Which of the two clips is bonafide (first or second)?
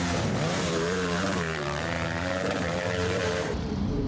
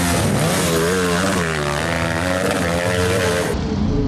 second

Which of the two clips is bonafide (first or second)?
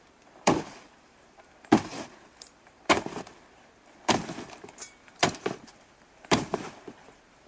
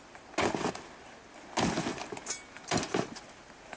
second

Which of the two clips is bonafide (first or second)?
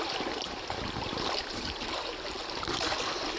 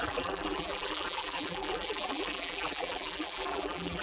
first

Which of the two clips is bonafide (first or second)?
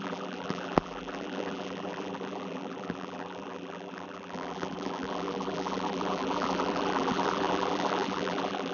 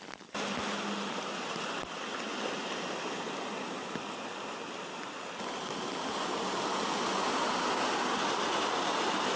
second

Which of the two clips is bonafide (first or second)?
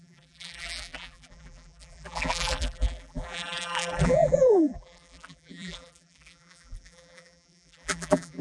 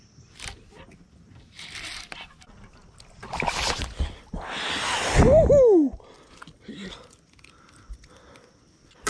second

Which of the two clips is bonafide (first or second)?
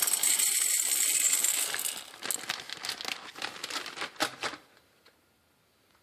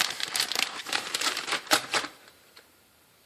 first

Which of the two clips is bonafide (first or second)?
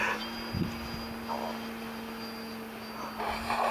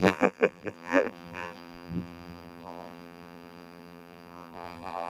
first